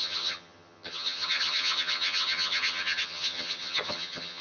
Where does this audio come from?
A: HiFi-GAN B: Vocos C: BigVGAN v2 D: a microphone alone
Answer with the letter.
A